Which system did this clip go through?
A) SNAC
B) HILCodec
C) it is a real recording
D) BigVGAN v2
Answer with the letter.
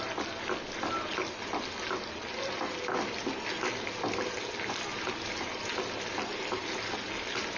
C